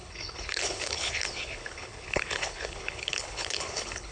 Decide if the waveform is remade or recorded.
remade